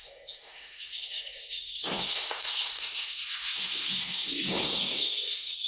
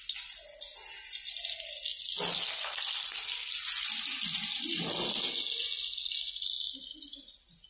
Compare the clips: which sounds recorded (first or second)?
second